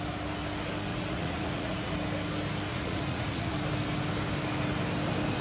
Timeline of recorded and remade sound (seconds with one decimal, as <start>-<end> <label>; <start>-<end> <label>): 0.0-0.9 recorded; 0.9-1.9 remade; 1.9-2.7 recorded; 2.7-3.5 remade; 3.5-5.4 recorded

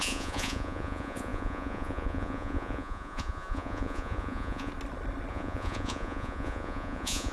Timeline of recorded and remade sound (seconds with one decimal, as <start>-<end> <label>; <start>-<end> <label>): 0.0-4.7 remade; 4.7-5.3 recorded; 5.3-7.3 remade

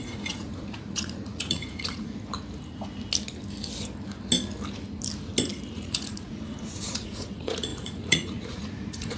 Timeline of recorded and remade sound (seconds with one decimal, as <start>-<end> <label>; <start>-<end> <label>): 0.0-2.1 remade; 2.1-5.7 recorded; 5.7-9.2 remade